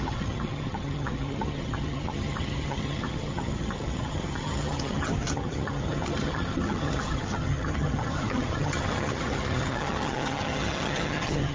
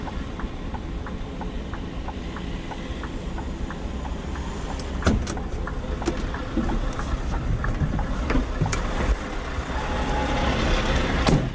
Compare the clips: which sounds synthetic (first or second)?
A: first